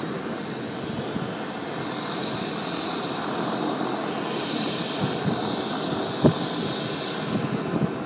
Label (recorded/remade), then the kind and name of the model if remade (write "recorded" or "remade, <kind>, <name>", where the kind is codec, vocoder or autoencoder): recorded